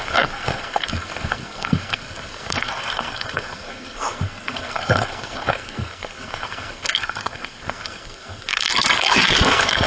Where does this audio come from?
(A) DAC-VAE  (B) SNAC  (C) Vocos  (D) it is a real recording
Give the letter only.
B